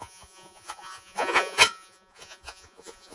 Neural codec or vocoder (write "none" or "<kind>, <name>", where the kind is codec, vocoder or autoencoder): vocoder, Vocos